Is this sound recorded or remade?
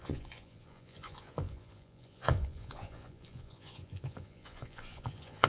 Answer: remade